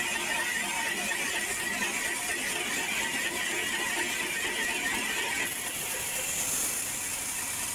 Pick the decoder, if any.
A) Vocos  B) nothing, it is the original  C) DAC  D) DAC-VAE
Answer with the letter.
B